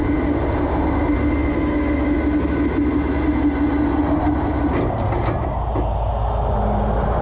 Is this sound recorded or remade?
recorded